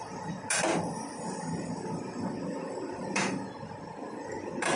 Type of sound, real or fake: real